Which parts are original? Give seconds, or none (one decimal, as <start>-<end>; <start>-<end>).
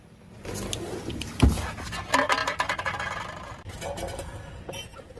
0.0-5.2